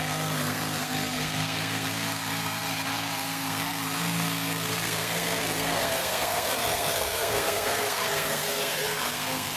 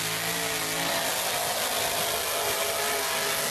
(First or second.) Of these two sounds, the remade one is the first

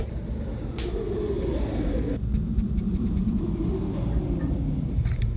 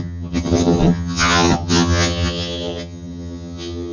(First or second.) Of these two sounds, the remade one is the second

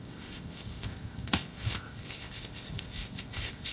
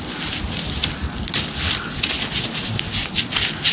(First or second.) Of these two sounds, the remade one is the first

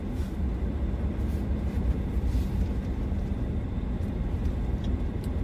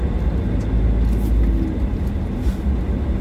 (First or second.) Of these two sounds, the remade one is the first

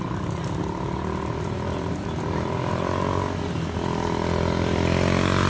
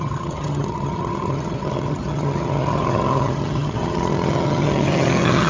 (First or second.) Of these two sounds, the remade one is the second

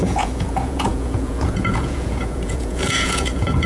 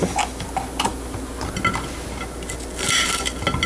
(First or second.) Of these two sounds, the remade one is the first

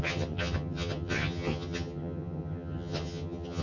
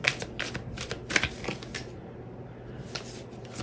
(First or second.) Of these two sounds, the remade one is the first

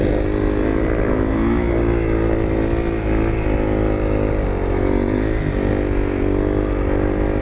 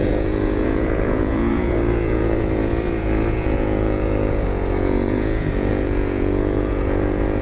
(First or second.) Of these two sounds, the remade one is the second